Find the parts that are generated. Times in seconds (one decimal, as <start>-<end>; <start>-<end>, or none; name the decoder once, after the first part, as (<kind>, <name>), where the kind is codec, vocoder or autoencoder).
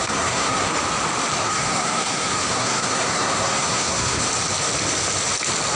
0.0-0.7 (codec, SNAC); 1.4-4.2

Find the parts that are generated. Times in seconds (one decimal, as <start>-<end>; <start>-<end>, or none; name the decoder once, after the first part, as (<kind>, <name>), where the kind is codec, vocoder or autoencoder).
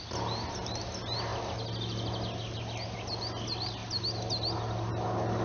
none